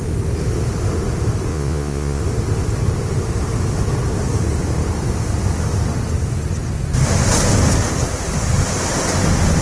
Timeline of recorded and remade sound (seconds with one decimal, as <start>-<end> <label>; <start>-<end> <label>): 0.0-1.5 recorded; 1.5-2.2 remade; 2.2-9.6 recorded